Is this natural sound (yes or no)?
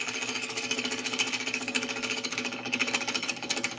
no